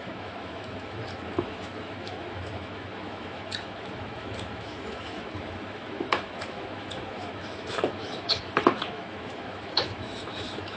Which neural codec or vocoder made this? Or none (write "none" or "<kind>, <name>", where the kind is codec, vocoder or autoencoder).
autoencoder, DAC-VAE